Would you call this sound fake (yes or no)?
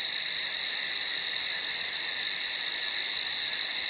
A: no